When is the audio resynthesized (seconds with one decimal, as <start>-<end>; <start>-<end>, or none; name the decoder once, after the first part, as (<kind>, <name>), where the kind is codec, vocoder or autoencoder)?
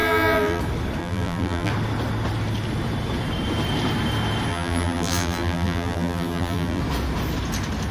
0.0-0.6 (vocoder, BigVGAN v2); 1.0-1.7; 4.5-6.8